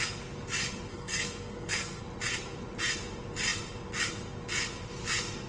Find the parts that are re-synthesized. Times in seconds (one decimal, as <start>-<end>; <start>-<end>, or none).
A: 0.9-2.0